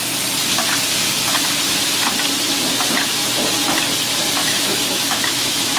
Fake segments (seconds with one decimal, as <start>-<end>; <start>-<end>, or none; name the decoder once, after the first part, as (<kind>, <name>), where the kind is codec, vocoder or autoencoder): 4.4-5.8 (autoencoder, DAC-VAE)